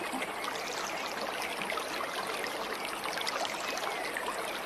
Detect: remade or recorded recorded